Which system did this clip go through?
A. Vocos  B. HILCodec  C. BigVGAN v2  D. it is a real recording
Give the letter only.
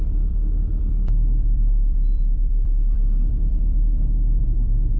C